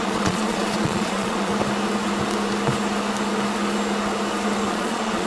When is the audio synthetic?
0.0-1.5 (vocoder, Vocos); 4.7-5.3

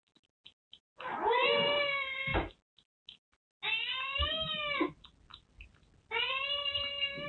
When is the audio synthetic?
none

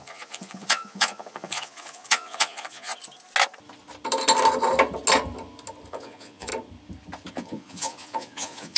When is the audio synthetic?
0.0-2.9 (vocoder, Vocos); 5.9-6.5; 7.3-8.8

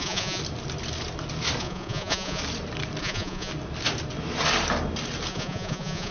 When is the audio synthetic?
0.0-0.4 (vocoder, Vocos); 1.6-2.4; 3.0-3.5; 5.3-6.1

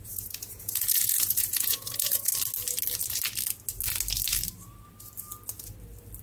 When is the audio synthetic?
0.0-2.3 (vocoder, Vocos)

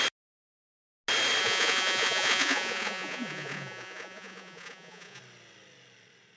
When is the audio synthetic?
1.4-5.2 (vocoder, Vocos)

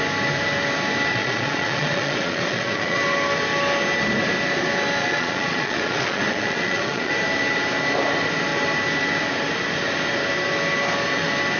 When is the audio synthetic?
1.1-3.0 (vocoder, Vocos); 5.0-7.1

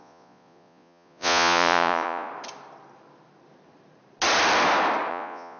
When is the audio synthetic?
0.0-2.3 (vocoder, Vocos); 5.1-5.6